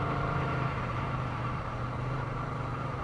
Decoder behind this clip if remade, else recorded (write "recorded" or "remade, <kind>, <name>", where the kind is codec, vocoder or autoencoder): remade, vocoder, BigVGAN v2